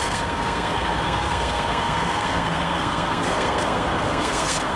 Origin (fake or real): fake